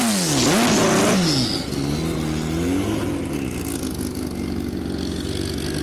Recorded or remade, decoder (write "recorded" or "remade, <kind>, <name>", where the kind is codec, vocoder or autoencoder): recorded